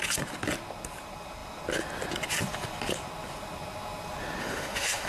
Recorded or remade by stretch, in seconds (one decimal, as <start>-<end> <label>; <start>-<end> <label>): 0.0-4.4 recorded; 4.4-5.1 remade